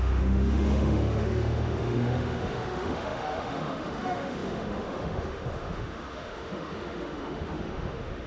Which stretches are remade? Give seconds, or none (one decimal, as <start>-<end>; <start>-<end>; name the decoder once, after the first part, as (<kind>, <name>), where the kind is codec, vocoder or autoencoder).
0.0-8.3 (autoencoder, DAC-VAE)